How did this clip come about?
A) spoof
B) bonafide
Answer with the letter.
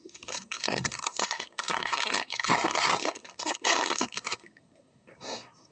A